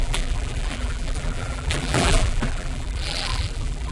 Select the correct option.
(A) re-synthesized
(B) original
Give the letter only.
A